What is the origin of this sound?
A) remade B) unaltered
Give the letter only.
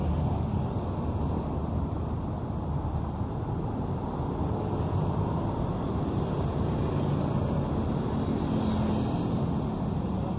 B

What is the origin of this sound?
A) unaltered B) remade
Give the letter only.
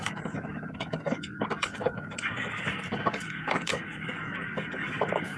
B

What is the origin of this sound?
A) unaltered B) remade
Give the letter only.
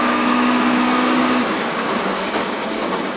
B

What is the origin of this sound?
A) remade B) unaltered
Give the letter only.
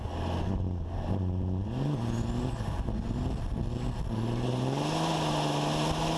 B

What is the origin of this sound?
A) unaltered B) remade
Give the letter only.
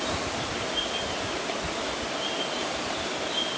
A